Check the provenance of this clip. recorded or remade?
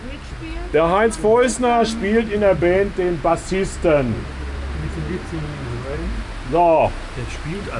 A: recorded